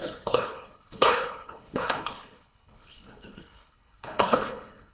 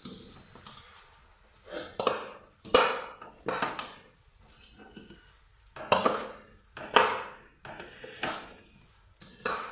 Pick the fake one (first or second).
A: first